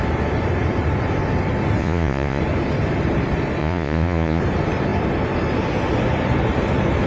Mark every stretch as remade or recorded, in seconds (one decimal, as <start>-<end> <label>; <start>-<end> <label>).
0.0-1.8 recorded; 1.8-2.4 remade; 2.4-3.6 recorded; 3.6-4.4 remade; 4.4-7.1 recorded